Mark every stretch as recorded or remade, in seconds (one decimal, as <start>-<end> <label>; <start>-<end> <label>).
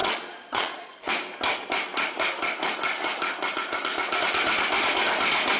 0.0-1.1 remade; 1.1-5.6 recorded